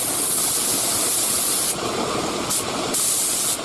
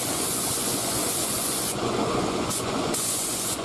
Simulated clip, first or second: second